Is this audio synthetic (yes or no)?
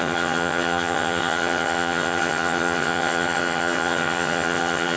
yes